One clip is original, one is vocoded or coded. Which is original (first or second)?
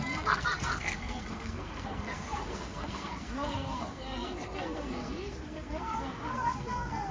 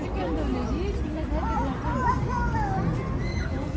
second